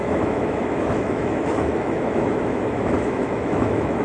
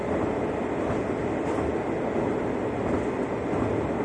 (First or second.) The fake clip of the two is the first